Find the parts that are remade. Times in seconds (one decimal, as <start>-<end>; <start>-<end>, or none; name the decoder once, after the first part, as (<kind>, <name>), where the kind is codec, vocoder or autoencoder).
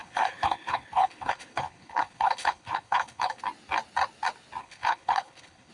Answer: 0.0-3.4 (codec, HILCodec); 4.6-5.7